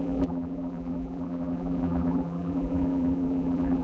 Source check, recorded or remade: remade